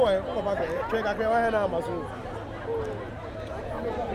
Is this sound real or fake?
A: real